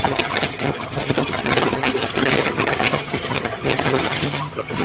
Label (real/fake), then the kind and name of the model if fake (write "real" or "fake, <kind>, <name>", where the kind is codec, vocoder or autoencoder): fake, vocoder, HiFi-GAN